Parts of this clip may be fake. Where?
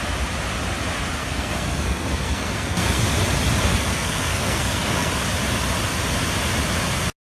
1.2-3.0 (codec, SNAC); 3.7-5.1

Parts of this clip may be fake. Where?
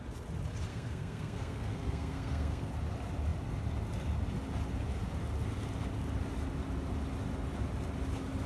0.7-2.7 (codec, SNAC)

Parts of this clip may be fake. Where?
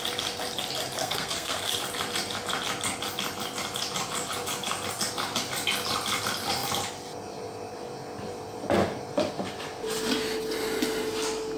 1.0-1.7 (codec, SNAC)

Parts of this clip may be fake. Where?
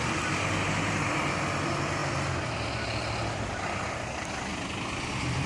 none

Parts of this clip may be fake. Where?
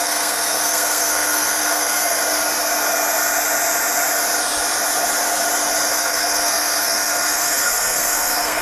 0.0-2.2 (codec, SNAC); 5.9-8.6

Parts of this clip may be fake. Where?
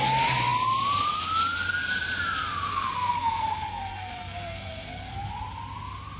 2.7-5.3 (codec, SNAC)